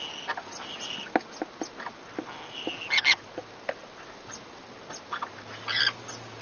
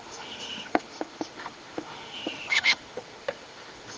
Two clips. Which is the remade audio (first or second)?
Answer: second